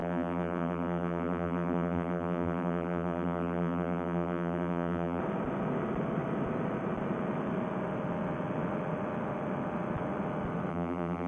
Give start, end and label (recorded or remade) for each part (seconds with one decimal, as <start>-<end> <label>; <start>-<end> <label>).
0.0-5.2 remade; 5.2-10.7 recorded; 10.7-11.3 remade